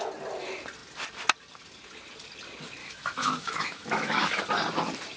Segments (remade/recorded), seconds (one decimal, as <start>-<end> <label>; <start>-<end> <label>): 0.0-2.8 recorded; 2.8-4.4 remade; 4.4-5.2 recorded